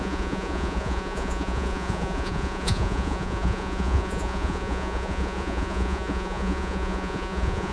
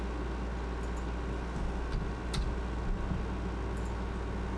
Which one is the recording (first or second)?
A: second